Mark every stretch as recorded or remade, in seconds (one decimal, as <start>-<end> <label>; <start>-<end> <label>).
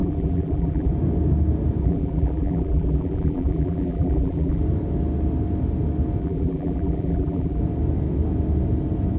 0.0-0.9 remade; 0.9-1.8 recorded; 1.8-4.6 remade; 4.6-6.2 recorded; 6.2-7.6 remade; 7.6-9.2 recorded